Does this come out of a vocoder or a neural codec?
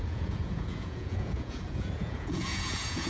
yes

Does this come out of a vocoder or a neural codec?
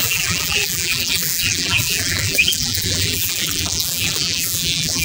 yes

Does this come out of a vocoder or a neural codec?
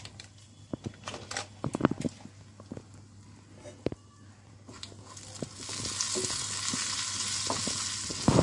no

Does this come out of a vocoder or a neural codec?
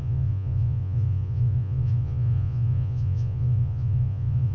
yes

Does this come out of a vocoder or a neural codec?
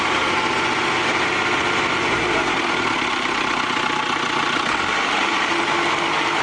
no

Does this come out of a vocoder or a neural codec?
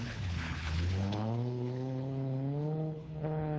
yes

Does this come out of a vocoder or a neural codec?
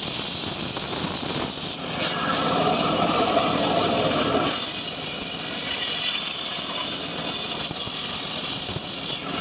no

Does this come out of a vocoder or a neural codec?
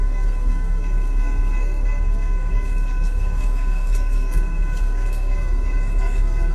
yes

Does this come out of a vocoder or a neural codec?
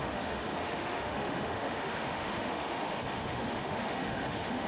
yes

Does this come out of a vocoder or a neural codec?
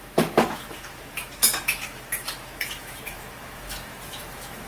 yes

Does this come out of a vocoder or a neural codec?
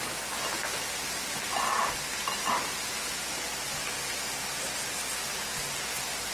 no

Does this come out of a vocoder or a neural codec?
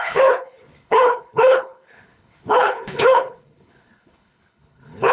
yes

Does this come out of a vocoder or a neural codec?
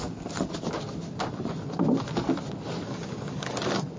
no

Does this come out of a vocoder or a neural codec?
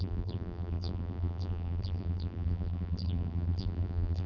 yes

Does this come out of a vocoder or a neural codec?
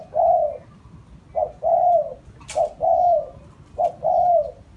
no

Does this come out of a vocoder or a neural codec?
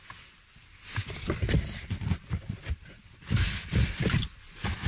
no